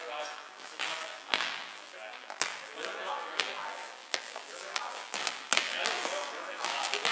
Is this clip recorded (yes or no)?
no